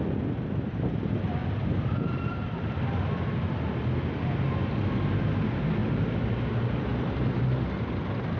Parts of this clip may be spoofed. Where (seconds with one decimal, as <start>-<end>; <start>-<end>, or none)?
1.4-3.6; 6.9-7.4